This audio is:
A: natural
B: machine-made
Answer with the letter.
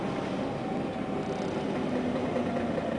A